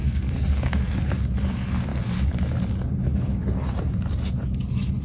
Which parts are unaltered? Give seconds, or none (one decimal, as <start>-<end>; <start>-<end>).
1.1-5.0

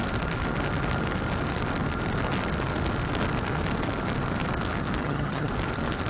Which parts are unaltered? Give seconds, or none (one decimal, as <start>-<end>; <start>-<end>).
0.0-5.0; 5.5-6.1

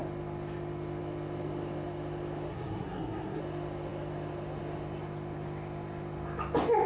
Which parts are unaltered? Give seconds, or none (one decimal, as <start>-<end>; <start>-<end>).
0.0-2.5; 3.4-6.9